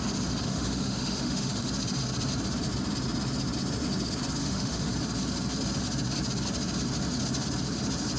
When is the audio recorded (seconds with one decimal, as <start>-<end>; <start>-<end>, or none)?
0.0-0.4; 1.7-4.4; 4.9-8.2